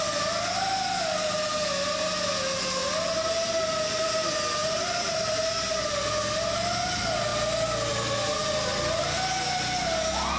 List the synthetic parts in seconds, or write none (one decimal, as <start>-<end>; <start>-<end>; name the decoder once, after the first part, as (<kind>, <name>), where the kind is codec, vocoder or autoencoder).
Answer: 4.6-6.1 (vocoder, BigVGAN v2)